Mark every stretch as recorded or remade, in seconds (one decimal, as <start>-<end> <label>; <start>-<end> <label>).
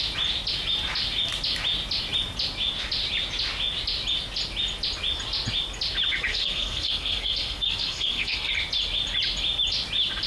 0.0-6.3 recorded; 6.3-8.5 remade; 8.5-10.3 recorded